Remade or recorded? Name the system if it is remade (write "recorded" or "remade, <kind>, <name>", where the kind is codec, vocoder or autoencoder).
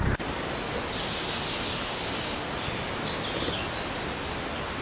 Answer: recorded